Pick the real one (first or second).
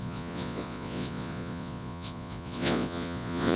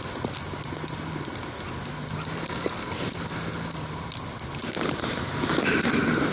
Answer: second